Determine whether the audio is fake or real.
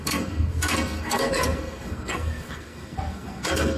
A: fake